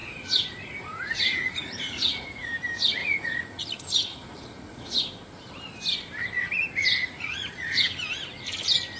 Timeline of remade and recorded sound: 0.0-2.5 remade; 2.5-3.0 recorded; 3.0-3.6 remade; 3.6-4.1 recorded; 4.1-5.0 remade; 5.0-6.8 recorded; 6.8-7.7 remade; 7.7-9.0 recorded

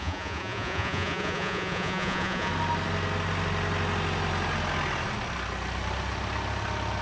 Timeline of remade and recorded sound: 0.0-2.5 remade; 2.5-7.0 recorded

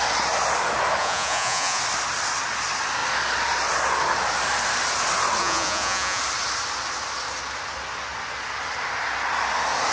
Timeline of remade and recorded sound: 0.0-1.0 recorded; 1.0-1.8 remade; 1.8-5.4 recorded; 5.4-6.2 remade; 6.2-9.9 recorded

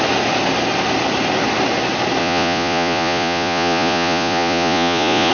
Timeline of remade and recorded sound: 0.0-2.2 recorded; 2.2-5.3 remade

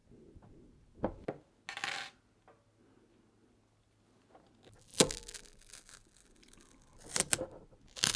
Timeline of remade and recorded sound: 0.0-8.2 recorded